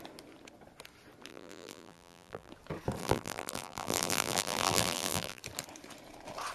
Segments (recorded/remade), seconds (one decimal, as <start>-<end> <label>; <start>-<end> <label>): 0.0-1.3 recorded; 1.3-2.5 remade; 2.5-3.0 recorded; 3.0-5.4 remade; 5.4-6.5 recorded